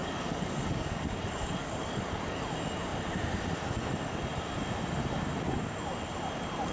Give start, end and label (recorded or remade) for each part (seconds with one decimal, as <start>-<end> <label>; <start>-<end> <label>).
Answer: 0.0-2.4 remade; 2.4-6.7 recorded